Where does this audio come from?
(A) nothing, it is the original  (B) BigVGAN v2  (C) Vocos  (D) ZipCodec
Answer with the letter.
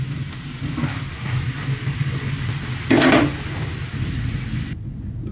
A